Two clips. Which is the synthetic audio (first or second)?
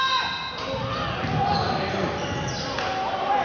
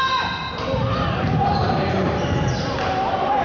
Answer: second